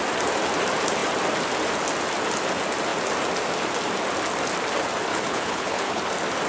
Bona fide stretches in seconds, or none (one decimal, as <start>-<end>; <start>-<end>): 0.0-5.1; 6.0-6.5